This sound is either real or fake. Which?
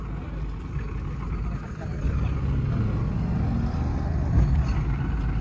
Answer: real